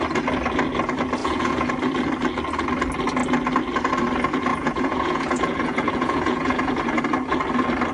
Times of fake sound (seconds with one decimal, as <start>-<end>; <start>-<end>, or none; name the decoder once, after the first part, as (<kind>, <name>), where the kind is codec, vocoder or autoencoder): 1.2-1.7 (vocoder, Vocos); 4.5-7.0